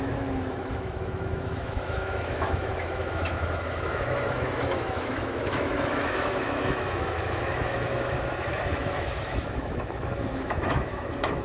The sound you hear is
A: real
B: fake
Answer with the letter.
B